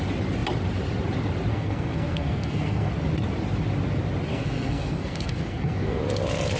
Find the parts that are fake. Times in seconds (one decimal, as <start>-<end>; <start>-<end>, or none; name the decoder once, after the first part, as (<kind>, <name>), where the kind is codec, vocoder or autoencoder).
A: 1.5-2.9 (codec, SNAC); 4.3-6.0